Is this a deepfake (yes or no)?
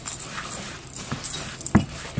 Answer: no